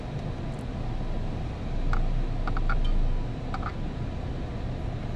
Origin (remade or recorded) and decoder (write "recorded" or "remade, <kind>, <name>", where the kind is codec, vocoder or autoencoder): recorded